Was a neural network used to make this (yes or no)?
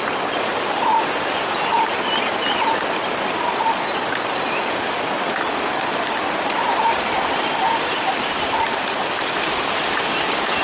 no